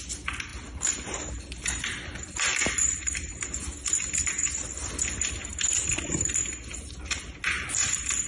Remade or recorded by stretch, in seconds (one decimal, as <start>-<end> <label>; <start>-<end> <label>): 0.0-0.5 recorded; 0.5-4.9 remade; 4.9-5.5 recorded; 5.5-7.2 remade; 7.2-8.3 recorded